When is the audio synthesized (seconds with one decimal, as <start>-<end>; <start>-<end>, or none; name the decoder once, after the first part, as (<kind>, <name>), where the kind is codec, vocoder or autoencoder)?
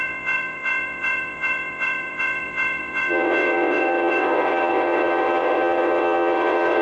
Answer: 0.0-6.8 (vocoder, WaveNeXt)